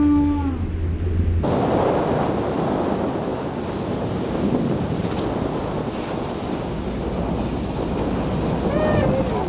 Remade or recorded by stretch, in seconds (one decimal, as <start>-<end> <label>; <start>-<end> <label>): 0.0-3.3 recorded; 3.3-4.1 remade; 4.1-9.5 recorded